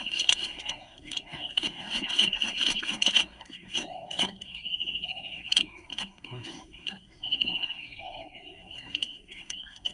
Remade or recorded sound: remade